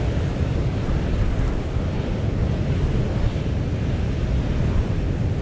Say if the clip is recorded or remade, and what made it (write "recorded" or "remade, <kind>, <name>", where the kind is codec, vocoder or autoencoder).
recorded